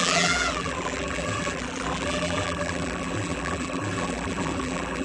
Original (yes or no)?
no